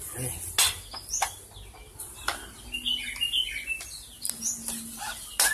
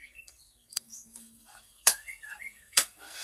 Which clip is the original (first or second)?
first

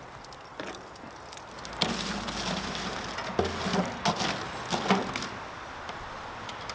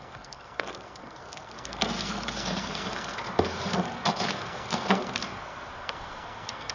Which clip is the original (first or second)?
first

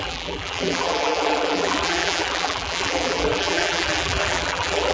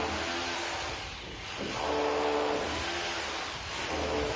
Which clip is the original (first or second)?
second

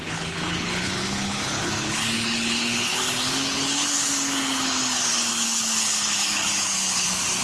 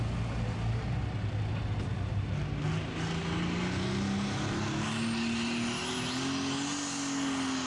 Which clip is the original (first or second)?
second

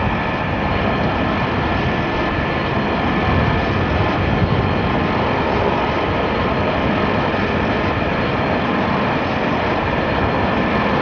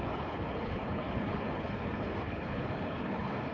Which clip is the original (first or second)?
first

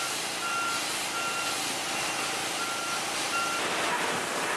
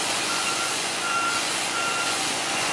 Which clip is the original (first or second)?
first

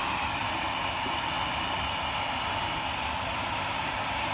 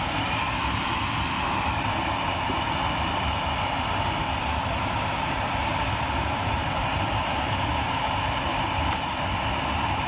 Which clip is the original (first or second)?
first